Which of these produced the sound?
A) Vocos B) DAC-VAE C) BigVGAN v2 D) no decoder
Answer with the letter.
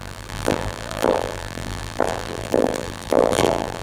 C